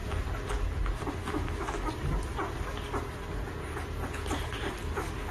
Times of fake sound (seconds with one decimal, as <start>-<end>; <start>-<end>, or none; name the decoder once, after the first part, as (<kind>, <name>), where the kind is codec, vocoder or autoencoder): 1.2-1.9 (autoencoder, DAC-VAE)